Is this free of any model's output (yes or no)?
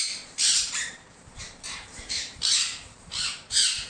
no